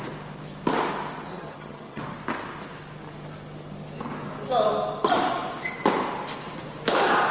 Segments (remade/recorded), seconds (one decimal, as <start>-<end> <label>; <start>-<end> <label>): 0.0-1.3 recorded; 1.3-2.0 remade; 2.0-7.3 recorded

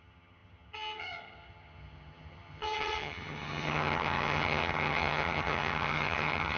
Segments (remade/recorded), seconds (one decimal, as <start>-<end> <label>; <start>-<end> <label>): 0.0-6.6 remade

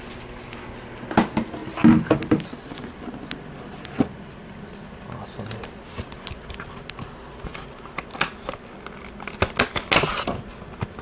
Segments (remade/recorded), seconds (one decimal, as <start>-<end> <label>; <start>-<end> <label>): 0.0-11.0 recorded

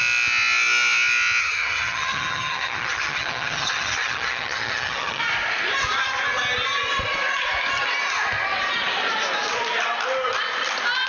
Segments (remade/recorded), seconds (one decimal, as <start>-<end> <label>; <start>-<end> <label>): 0.0-1.4 recorded; 1.4-5.2 remade; 5.2-11.1 recorded